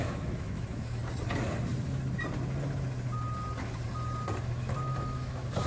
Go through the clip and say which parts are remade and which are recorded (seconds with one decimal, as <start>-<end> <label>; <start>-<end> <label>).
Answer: 0.0-1.0 remade; 1.0-4.4 recorded; 4.4-5.7 remade